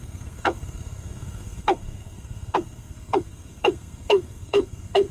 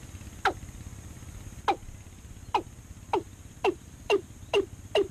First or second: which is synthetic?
first